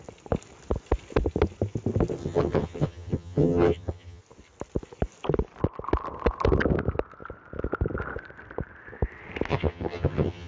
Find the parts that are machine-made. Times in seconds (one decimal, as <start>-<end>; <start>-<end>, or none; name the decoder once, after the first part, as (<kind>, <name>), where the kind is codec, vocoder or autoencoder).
2.2-4.2 (vocoder, HiFi-GAN); 9.5-10.5